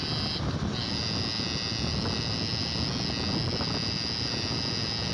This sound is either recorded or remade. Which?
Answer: recorded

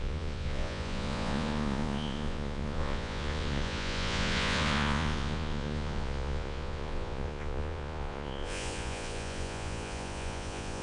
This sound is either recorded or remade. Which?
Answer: remade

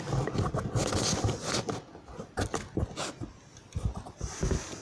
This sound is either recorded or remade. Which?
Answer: recorded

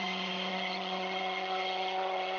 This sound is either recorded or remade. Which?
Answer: remade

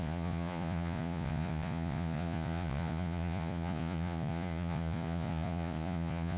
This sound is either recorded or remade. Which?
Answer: remade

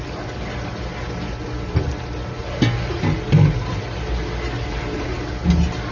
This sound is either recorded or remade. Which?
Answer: recorded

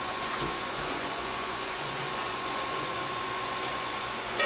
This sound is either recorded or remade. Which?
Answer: remade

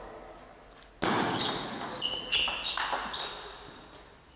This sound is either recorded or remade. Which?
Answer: recorded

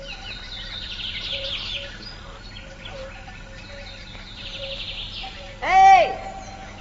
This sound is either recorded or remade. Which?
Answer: recorded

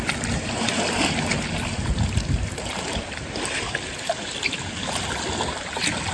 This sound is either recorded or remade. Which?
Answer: recorded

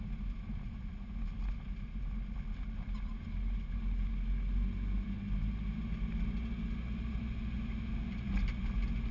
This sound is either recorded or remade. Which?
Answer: recorded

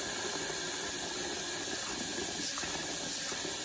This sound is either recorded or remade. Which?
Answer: recorded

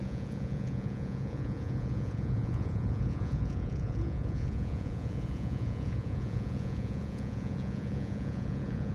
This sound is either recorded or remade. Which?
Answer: remade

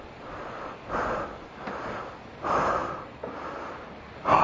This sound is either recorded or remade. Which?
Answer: recorded